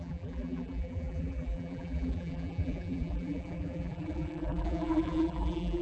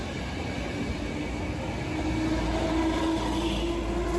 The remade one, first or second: first